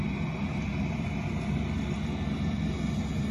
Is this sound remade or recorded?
recorded